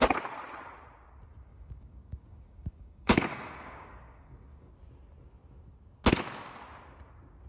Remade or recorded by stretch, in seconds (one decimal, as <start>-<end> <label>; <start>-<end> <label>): 0.0-1.5 recorded; 1.5-4.7 remade; 4.7-7.5 recorded